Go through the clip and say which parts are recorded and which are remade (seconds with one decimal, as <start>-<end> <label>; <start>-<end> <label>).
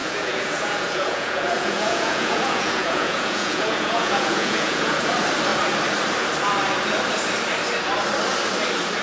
0.0-5.1 remade; 5.1-9.0 recorded